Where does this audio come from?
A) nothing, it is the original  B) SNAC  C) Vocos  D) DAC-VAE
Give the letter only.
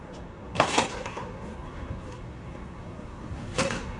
B